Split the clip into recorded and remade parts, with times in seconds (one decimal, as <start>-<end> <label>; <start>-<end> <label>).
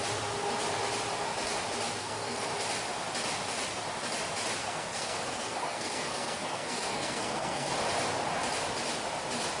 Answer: 0.0-2.0 recorded; 2.0-2.5 remade; 2.5-4.6 recorded; 4.6-7.7 remade; 7.7-9.6 recorded